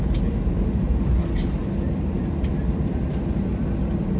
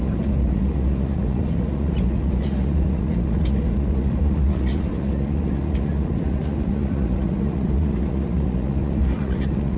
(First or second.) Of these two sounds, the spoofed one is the second